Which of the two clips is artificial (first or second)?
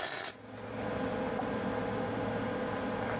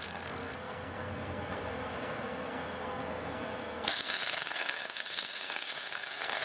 second